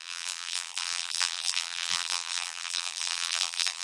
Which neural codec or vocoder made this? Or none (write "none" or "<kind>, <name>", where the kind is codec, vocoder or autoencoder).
vocoder, BigVGAN v2